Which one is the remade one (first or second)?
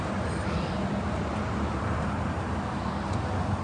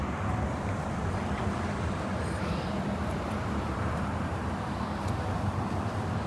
second